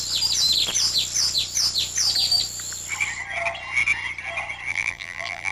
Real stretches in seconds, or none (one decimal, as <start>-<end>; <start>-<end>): 0.0-4.7